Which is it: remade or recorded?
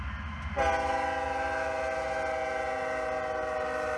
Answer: recorded